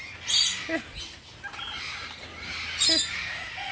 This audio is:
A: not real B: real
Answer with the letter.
B